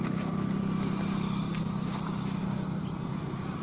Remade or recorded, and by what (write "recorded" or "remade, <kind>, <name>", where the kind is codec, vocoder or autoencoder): recorded